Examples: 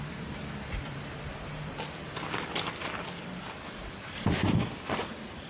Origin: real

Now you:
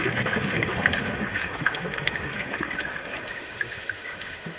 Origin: fake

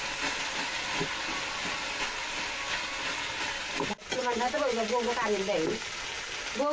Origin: real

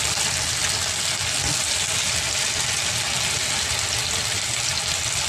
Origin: real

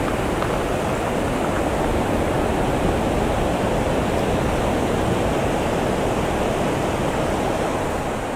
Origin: real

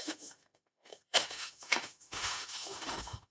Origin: fake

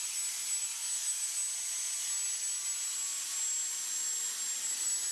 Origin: real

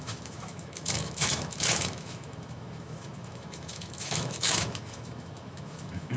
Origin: fake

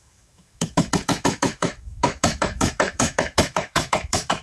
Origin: fake